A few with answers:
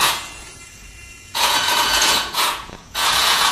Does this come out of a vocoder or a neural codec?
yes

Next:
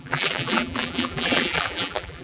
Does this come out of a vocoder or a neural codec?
yes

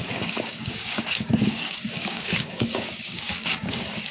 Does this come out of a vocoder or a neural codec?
yes